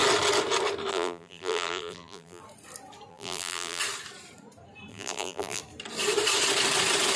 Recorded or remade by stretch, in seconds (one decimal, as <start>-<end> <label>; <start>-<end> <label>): 0.0-0.9 recorded; 0.9-2.4 remade; 2.4-3.1 recorded; 3.1-3.8 remade; 3.8-4.9 recorded; 4.9-5.6 remade; 5.6-7.2 recorded